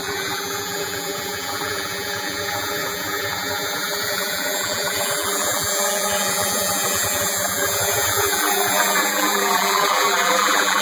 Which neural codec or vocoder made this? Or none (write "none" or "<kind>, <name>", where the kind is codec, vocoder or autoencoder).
vocoder, BigVGAN v2